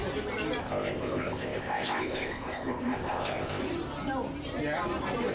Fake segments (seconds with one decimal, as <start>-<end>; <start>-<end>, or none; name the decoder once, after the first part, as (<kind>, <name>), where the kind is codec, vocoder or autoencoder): 0.6-3.6 (codec, ZipCodec)